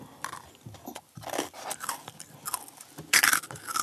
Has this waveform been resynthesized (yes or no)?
no